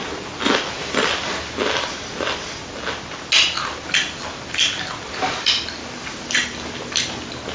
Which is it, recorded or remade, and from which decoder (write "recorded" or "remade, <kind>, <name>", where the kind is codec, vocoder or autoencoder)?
recorded